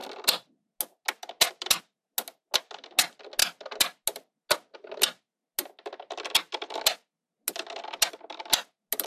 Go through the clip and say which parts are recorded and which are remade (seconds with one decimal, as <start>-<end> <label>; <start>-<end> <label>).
0.0-9.1 recorded